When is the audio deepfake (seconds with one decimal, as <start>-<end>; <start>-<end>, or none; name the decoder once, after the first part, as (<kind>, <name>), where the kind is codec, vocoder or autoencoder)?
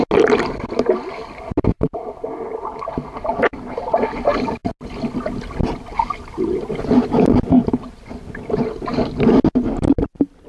none